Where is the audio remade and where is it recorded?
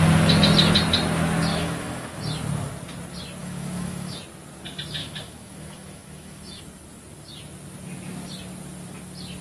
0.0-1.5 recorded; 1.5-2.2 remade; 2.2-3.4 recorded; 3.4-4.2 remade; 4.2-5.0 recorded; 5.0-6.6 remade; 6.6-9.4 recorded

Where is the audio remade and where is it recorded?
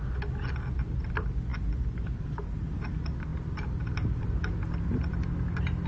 0.0-3.3 recorded; 3.3-4.2 remade; 4.2-5.9 recorded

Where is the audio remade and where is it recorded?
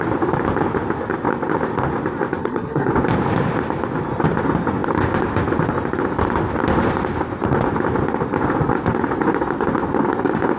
0.0-2.4 recorded; 2.4-2.9 remade; 2.9-10.6 recorded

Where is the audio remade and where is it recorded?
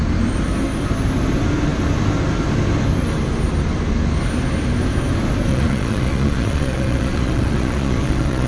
0.0-5.5 recorded; 5.5-8.5 remade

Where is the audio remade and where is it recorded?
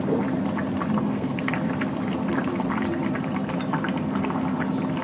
0.0-1.0 recorded; 1.0-1.5 remade; 1.5-5.0 recorded